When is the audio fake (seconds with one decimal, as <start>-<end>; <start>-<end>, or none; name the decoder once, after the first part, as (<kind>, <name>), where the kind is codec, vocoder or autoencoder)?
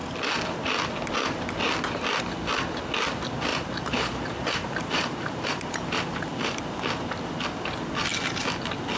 3.5-6.8 (vocoder, BigVGAN v2)